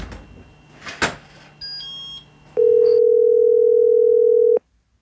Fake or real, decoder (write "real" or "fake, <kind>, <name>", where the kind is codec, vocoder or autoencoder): real